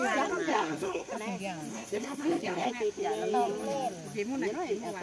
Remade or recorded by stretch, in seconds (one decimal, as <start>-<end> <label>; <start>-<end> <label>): 0.0-0.5 recorded; 0.5-1.1 remade; 1.1-1.7 recorded; 1.7-2.7 remade; 2.7-5.0 recorded